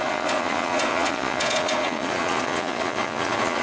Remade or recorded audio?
remade